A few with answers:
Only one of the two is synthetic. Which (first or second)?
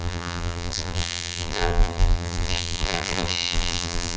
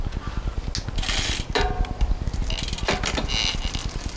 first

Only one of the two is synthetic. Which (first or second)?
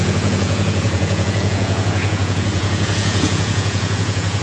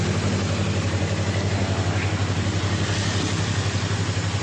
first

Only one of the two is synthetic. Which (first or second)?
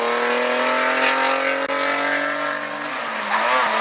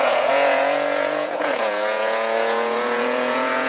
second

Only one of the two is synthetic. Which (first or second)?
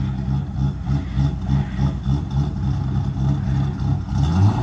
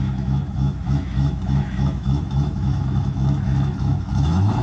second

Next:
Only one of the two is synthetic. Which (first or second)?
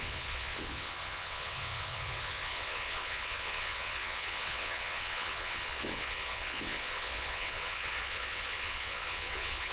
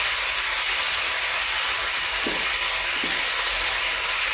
first